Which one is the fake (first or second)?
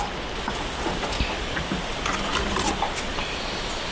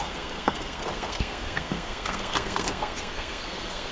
second